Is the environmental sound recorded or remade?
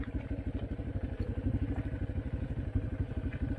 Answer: recorded